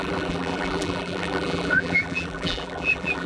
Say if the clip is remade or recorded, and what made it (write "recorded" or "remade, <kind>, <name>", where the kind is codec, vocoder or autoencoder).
remade, vocoder, BigVGAN v2